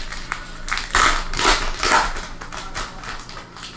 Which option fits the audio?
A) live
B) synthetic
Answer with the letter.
A